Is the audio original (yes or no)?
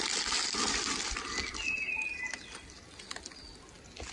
yes